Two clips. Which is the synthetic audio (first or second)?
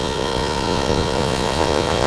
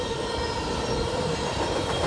first